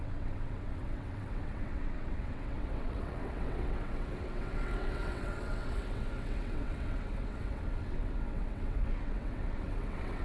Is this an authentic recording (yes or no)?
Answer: no